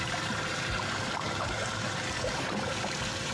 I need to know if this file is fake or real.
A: fake